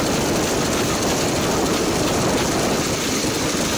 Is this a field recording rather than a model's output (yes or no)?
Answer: yes